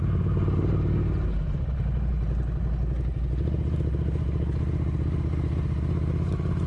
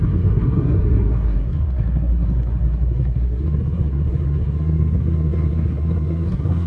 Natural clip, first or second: first